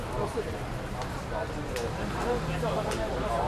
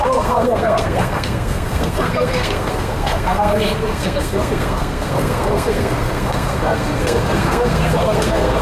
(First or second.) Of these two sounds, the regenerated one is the second